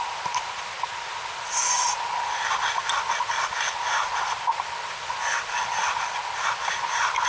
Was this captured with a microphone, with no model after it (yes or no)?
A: yes